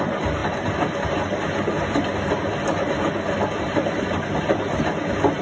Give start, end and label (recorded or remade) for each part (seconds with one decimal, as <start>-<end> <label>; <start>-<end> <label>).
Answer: 0.0-5.4 recorded